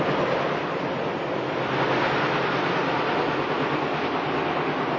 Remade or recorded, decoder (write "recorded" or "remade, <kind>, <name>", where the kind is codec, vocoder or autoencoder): recorded